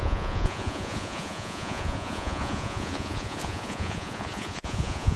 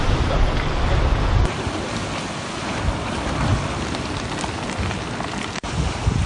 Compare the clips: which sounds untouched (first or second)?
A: second